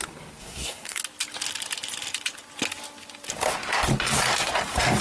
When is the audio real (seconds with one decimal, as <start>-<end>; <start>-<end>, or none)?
0.0-0.4; 1.0-5.0